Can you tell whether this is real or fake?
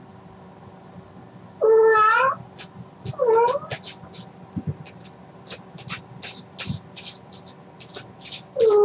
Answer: real